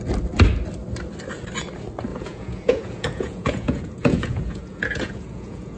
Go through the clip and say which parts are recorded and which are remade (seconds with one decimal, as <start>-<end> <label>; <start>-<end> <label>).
0.0-2.1 recorded; 2.1-5.8 remade